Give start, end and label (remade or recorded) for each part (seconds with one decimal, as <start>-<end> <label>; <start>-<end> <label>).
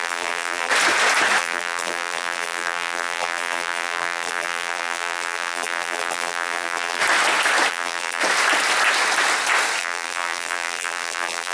0.0-0.7 remade; 0.7-1.4 recorded; 1.4-7.0 remade; 7.0-7.7 recorded; 7.7-8.2 remade; 8.2-9.8 recorded; 9.8-11.5 remade